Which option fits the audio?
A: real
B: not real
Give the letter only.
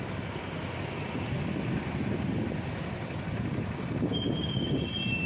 A